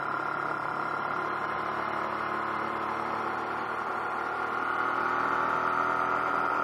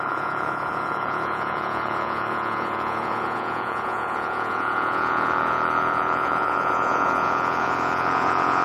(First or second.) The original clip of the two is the first